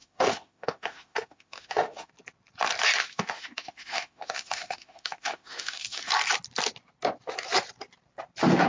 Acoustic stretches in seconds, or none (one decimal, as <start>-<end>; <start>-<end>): 2.1-3.0; 6.1-8.7